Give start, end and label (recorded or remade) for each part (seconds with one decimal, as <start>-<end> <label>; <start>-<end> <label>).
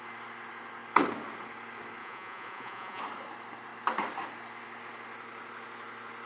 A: 0.0-2.0 recorded; 2.0-3.0 remade; 3.0-6.3 recorded